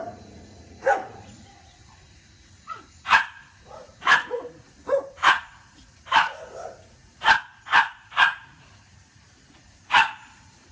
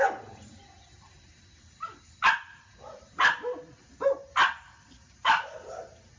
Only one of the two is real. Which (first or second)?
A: second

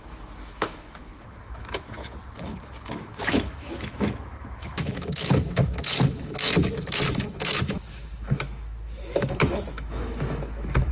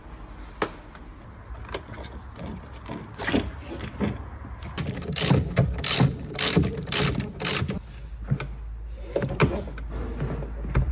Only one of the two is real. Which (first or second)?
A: second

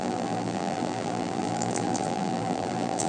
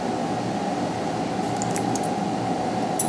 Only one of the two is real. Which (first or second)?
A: second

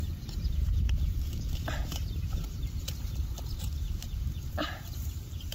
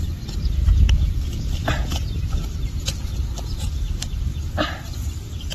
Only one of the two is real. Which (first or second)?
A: second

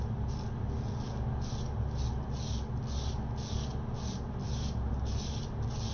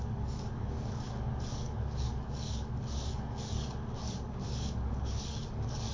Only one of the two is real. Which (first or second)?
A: first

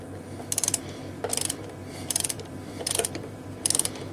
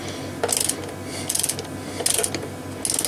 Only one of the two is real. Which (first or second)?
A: second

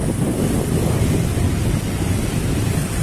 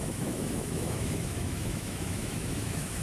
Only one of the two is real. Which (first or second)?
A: first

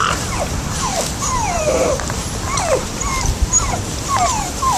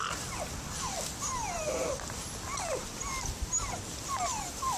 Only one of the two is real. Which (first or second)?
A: second